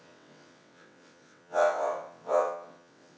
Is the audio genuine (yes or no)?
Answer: no